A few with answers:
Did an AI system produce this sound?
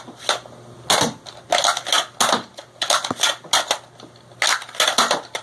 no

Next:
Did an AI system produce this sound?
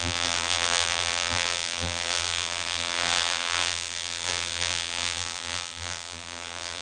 yes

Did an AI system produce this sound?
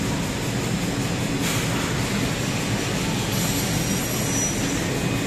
no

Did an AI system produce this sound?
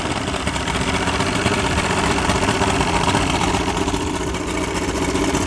yes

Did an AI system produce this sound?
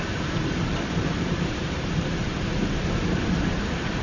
yes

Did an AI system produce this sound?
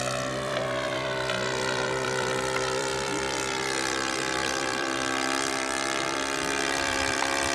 yes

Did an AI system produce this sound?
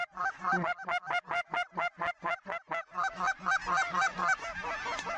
no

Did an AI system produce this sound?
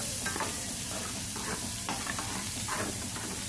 yes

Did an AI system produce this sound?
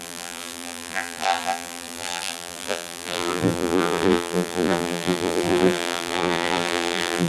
yes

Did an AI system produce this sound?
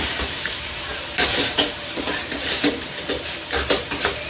yes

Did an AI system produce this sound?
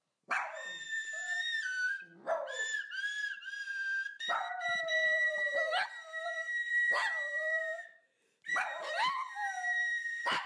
yes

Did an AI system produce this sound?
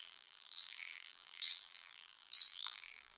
yes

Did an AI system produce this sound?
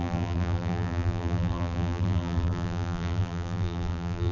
yes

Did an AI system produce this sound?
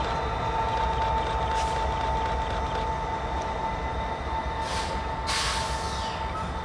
no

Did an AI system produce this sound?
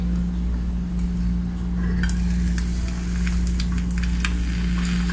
no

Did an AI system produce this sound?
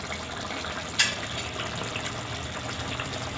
no